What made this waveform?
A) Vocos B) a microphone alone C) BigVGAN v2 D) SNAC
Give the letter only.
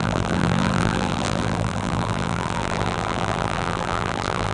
C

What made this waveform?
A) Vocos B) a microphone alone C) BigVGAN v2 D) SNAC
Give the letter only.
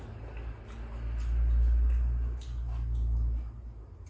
B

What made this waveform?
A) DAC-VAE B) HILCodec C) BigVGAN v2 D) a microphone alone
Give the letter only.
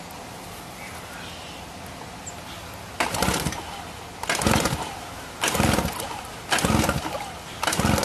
D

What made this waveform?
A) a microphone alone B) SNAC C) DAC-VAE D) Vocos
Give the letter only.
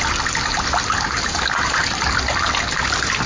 A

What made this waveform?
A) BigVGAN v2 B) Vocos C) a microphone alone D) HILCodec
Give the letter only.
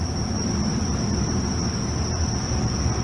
C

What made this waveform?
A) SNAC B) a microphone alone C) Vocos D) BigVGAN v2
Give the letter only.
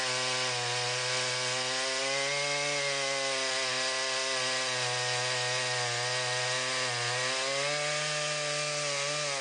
B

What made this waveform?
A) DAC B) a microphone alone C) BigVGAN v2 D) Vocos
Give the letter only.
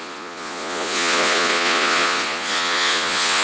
D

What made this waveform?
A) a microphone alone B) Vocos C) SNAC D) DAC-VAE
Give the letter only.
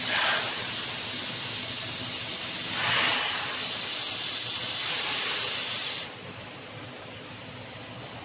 A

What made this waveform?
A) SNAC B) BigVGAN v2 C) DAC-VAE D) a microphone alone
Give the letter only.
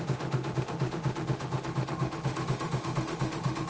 C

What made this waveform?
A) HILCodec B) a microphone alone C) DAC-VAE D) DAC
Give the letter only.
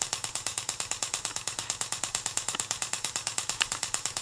D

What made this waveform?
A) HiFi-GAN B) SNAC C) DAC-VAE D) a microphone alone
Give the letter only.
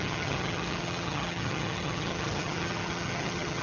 A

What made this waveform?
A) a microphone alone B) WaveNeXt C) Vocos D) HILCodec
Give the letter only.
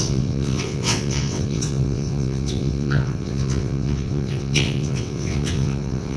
B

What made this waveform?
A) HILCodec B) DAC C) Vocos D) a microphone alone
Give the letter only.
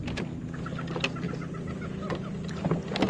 D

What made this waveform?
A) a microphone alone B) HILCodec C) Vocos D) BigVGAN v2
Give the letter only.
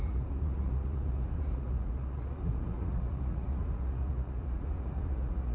C